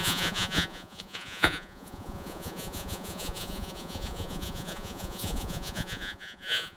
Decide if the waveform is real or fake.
fake